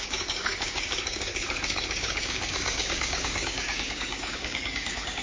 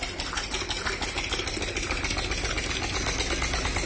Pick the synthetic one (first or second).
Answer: first